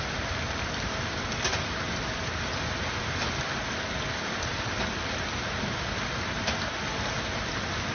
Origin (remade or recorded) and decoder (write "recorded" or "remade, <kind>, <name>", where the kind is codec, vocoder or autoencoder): recorded